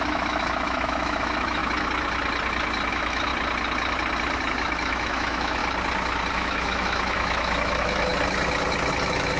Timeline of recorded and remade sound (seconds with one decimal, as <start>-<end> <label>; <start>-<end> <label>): 0.0-1.6 remade; 1.6-2.9 recorded; 2.9-3.3 remade; 3.3-4.5 recorded; 4.5-5.6 remade; 5.6-6.3 recorded; 6.3-8.1 remade; 8.1-9.0 recorded; 9.0-9.4 remade